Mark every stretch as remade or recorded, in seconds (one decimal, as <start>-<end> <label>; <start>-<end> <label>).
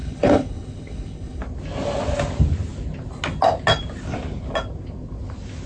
0.0-1.4 remade; 1.4-5.7 recorded